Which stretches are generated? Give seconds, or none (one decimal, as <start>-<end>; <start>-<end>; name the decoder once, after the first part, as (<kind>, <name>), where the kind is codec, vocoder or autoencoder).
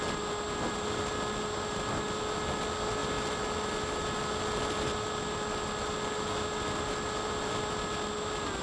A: none